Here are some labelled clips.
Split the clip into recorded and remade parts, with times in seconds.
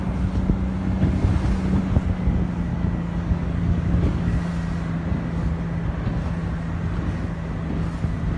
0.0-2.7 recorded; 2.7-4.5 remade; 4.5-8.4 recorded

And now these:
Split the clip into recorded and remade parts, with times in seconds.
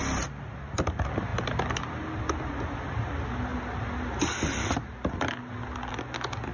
0.0-6.5 recorded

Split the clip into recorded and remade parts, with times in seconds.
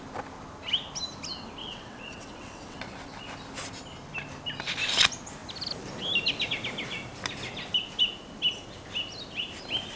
0.0-1.6 recorded; 1.6-3.1 remade; 3.1-10.0 recorded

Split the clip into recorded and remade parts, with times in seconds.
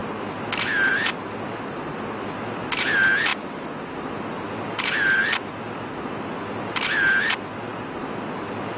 0.0-3.3 recorded; 3.3-6.4 remade; 6.4-8.8 recorded